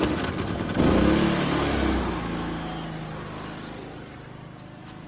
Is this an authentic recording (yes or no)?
yes